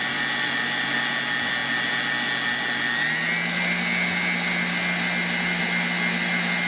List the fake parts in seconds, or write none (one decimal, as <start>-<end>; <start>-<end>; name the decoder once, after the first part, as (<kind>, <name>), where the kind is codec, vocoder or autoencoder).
none